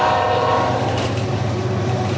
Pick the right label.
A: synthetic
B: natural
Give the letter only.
A